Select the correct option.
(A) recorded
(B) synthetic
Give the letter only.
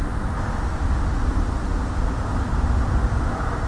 A